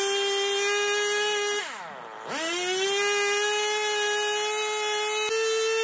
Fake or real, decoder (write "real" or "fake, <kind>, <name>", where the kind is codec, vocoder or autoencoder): real